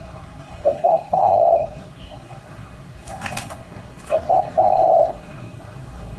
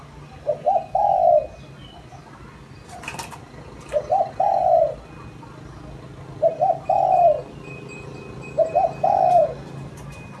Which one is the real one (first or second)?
second